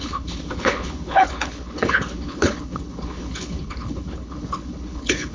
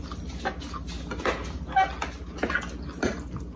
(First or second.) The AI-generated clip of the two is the first